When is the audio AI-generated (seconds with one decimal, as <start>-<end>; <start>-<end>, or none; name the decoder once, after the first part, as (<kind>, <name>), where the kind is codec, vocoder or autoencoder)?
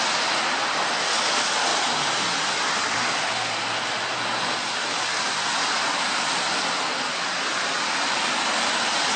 none